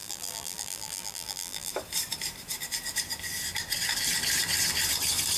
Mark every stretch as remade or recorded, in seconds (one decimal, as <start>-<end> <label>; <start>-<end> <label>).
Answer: 0.0-1.7 remade; 1.7-5.4 recorded